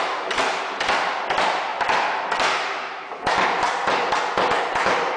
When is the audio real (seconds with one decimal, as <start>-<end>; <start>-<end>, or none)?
0.0-5.2

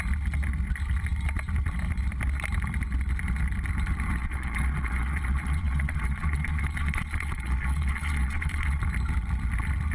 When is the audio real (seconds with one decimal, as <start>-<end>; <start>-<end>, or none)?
0.0-4.2; 8.8-9.9

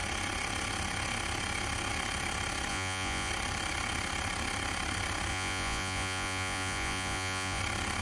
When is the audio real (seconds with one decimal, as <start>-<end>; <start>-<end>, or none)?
0.0-2.7; 3.3-5.3; 7.6-8.0

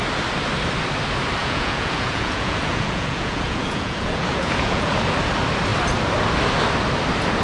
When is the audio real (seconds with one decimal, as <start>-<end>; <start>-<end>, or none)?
0.0-1.4; 4.9-7.4

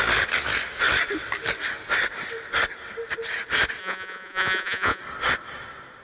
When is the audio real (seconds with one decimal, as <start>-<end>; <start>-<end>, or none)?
0.0-3.8; 5.0-6.0

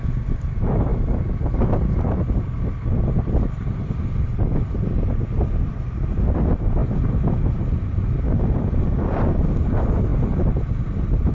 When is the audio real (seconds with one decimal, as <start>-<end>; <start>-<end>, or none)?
0.0-11.3